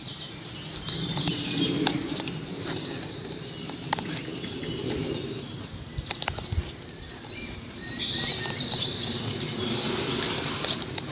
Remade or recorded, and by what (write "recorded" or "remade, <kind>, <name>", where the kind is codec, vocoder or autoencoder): remade, vocoder, BigVGAN v2